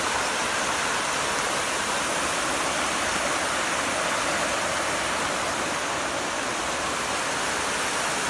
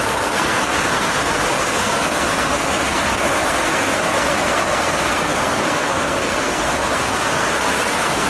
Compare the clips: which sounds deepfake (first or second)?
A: second